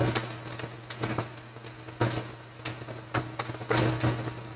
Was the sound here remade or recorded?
recorded